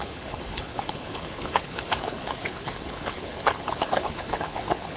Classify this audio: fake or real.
fake